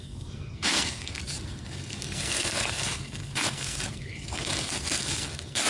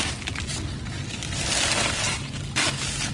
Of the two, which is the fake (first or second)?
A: first